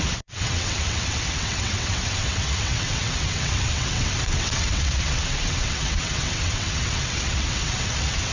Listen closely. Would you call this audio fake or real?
fake